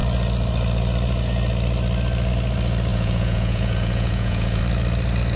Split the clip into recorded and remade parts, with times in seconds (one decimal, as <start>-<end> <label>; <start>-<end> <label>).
0.0-2.9 recorded; 2.9-4.6 remade; 4.6-5.4 recorded